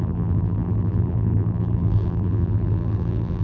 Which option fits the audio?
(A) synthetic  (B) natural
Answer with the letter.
A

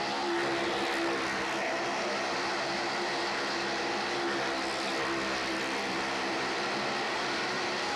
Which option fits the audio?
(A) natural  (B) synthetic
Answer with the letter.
A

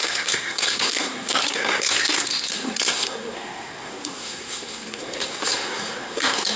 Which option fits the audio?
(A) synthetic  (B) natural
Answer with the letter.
A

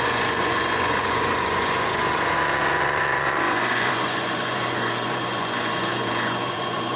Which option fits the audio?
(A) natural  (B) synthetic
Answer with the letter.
B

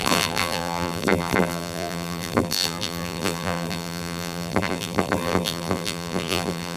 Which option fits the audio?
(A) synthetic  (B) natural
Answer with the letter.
A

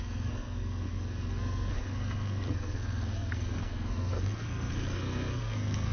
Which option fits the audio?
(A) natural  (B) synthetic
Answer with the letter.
B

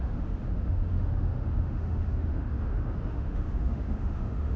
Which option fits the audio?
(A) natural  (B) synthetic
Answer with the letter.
B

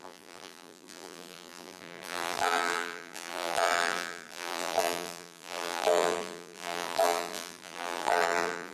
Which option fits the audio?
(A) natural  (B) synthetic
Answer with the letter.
B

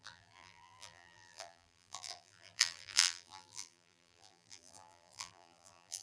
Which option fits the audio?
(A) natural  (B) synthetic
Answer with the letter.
B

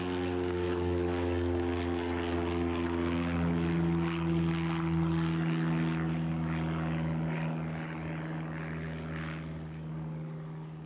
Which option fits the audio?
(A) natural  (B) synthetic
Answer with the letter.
B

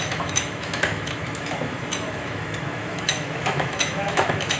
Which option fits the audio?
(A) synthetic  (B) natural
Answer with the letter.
A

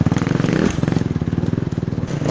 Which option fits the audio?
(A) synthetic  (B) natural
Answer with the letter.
B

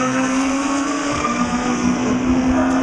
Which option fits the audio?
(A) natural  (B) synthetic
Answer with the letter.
B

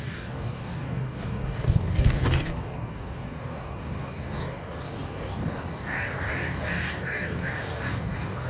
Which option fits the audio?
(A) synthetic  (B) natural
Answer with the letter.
A